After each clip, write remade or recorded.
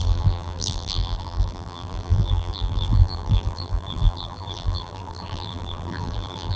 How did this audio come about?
remade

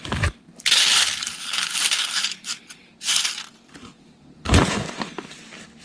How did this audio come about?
recorded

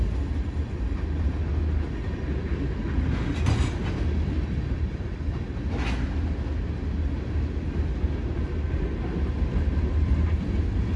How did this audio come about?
recorded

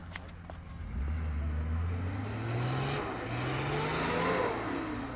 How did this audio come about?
recorded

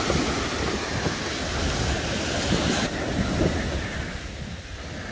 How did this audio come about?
recorded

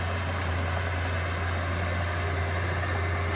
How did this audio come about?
recorded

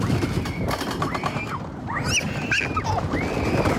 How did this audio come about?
recorded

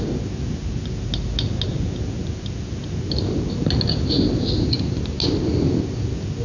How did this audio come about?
recorded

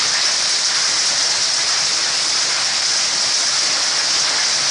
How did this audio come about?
recorded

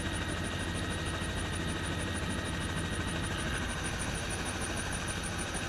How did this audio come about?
recorded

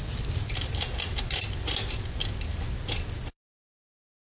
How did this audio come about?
recorded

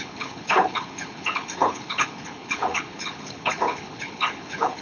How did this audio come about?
remade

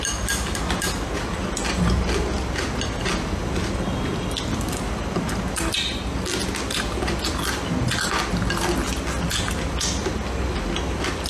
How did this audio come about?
recorded